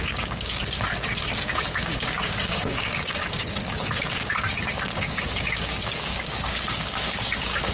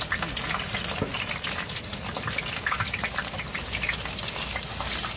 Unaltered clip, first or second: second